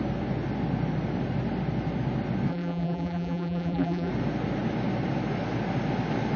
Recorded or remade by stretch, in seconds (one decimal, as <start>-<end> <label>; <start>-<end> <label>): 0.0-2.5 recorded; 2.5-4.1 remade; 4.1-6.4 recorded